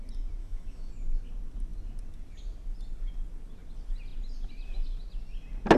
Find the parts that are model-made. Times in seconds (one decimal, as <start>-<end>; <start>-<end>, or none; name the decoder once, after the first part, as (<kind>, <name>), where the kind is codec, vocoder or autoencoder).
0.4-0.9 (autoencoder, DAC-VAE)